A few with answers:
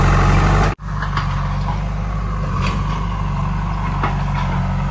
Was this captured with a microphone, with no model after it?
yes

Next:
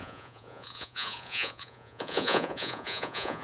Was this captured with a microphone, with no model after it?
no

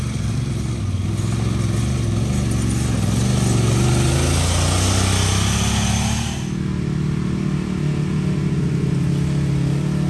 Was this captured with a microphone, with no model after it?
yes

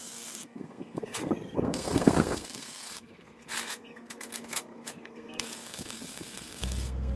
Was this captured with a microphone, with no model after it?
no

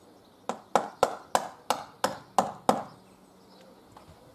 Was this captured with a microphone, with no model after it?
yes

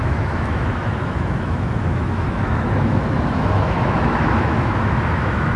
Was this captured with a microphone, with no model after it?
no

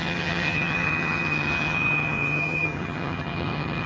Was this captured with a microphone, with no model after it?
no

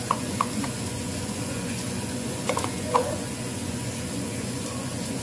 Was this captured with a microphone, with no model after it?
no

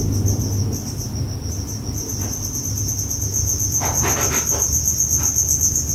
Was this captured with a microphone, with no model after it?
yes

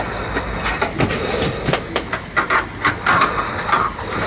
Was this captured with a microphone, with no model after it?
yes